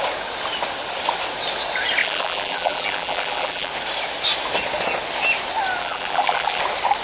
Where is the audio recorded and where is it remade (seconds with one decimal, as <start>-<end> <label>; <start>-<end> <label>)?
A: 0.0-2.0 recorded; 2.0-3.7 remade; 3.7-5.8 recorded; 5.8-6.6 remade; 6.6-7.0 recorded